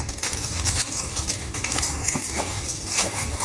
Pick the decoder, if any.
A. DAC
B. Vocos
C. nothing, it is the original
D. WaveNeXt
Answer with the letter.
A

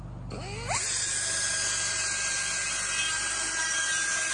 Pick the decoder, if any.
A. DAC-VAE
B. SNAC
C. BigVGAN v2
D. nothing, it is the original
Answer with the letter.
D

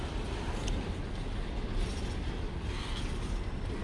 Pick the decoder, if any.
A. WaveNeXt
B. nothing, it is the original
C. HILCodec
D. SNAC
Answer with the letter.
B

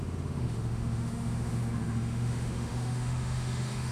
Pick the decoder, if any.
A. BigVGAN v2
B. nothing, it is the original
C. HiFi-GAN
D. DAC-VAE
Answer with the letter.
D